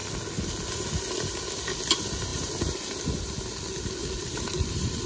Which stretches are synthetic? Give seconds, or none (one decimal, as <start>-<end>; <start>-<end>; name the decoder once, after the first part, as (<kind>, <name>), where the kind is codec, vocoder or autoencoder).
2.3-3.0 (vocoder, BigVGAN v2); 4.0-5.1